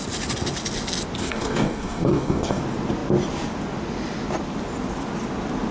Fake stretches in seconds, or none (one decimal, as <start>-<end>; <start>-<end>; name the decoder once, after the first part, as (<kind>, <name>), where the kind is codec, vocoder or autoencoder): 1.2-2.6 (codec, DAC)